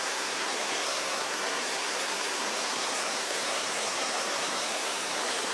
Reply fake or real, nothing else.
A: fake